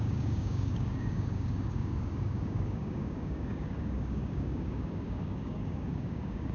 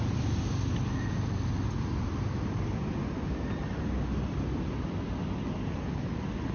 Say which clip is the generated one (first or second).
first